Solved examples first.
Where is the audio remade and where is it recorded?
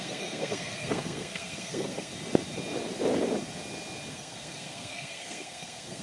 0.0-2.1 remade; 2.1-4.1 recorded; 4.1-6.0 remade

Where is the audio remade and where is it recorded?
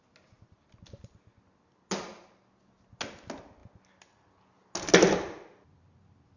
0.0-6.4 recorded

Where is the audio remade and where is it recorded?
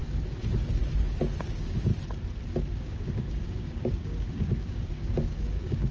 0.0-1.4 recorded; 1.4-1.9 remade; 1.9-2.8 recorded; 2.8-5.9 remade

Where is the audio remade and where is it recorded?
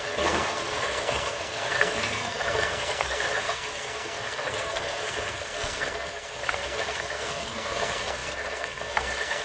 0.0-9.4 remade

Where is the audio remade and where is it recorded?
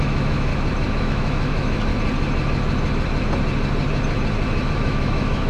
0.0-0.5 remade; 0.5-1.0 recorded; 1.0-1.9 remade; 1.9-4.7 recorded; 4.7-5.5 remade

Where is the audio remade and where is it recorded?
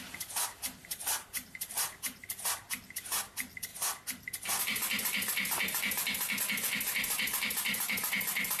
0.0-0.8 recorded; 0.8-2.5 remade; 2.5-8.6 recorded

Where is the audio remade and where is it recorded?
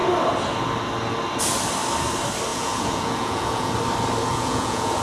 0.0-2.5 recorded; 2.5-3.7 remade; 3.7-4.3 recorded; 4.3-5.0 remade